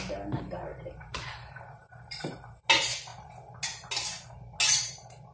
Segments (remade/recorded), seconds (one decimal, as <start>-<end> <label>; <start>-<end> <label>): 0.0-0.7 recorded; 0.7-2.6 remade; 2.6-5.3 recorded